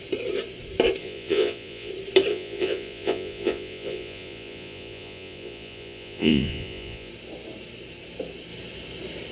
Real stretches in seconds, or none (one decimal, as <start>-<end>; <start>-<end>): 0.0-1.0; 1.9-2.3; 7.1-9.3